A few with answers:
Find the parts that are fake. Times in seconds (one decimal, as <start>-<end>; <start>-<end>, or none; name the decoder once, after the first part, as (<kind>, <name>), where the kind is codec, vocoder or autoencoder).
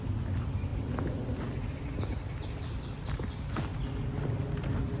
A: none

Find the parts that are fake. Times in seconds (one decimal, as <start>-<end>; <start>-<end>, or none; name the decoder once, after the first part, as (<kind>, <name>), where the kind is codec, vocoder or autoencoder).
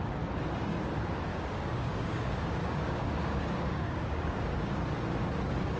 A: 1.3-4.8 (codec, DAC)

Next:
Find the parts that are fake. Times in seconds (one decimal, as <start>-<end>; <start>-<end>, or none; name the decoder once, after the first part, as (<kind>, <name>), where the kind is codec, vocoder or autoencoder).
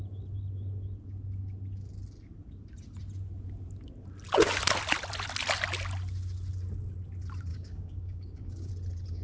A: 7.5-8.7 (codec, DAC)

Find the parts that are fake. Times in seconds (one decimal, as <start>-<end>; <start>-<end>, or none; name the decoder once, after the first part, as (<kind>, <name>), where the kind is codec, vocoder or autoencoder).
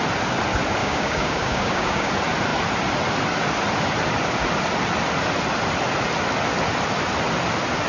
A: 0.8-2.1 (codec, DAC)